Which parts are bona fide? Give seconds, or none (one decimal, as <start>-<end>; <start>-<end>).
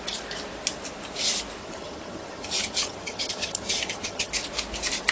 0.0-1.6; 4.3-5.1